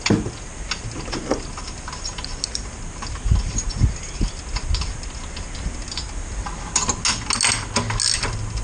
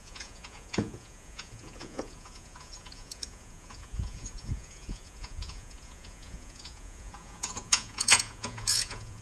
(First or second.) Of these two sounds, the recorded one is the first